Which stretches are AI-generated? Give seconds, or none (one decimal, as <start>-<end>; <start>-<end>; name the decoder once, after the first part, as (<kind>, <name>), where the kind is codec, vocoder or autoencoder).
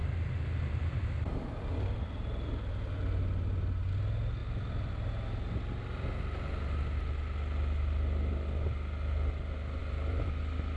0.0-3.9 (vocoder, BigVGAN v2); 4.4-4.9; 9.8-10.4